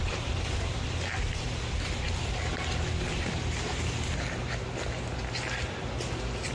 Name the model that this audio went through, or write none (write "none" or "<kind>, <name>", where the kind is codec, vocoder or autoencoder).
none